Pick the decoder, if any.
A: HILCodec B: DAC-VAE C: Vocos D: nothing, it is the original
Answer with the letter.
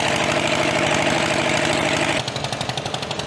D